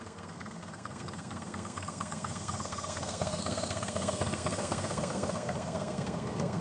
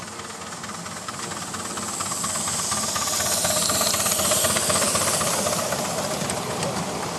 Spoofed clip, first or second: first